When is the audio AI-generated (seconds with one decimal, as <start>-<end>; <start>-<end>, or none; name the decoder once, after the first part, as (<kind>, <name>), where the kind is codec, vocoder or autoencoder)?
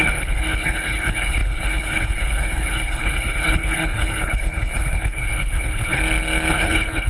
0.0-6.0 (codec, HILCodec); 6.5-7.1